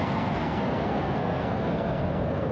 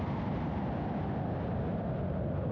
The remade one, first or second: first